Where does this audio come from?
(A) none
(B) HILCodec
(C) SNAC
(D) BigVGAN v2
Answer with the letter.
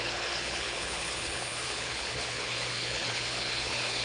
B